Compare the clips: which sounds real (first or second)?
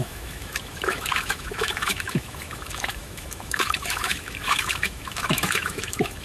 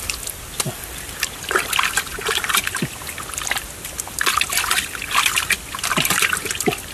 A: second